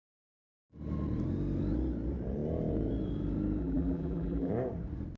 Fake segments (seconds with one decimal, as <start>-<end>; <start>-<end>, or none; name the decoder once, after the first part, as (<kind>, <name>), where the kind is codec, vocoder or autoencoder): 3.6-4.5 (vocoder, BigVGAN v2)